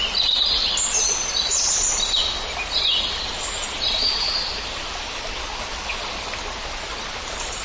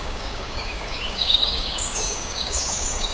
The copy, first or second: second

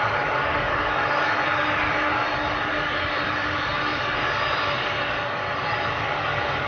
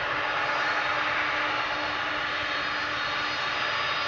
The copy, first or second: first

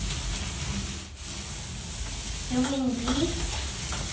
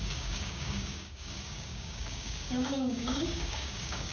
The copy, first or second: second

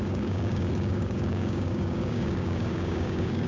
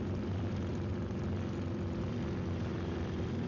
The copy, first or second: first